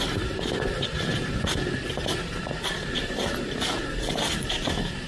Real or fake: real